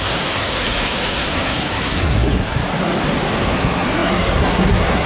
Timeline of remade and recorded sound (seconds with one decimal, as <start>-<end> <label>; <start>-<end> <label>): 0.0-2.6 remade; 2.6-3.5 recorded; 3.5-5.1 remade